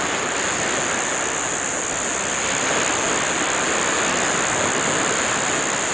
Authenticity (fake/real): real